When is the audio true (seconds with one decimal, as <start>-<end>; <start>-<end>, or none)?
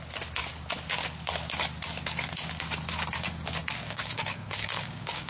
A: 0.0-3.6